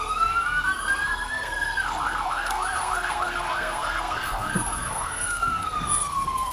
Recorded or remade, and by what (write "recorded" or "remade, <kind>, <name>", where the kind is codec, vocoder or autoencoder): remade, codec, SNAC